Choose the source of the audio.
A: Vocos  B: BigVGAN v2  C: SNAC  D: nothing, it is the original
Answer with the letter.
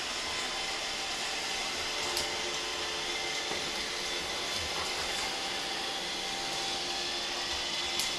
D